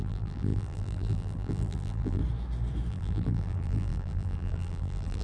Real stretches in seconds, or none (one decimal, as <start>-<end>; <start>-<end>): 2.2-2.9